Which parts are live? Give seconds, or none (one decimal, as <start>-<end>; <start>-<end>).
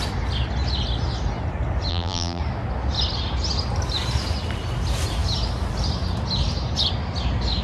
0.0-1.9; 2.4-7.6